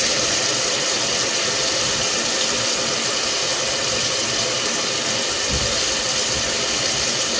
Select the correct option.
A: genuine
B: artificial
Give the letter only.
A